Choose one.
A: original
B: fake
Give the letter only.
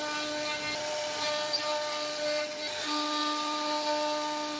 A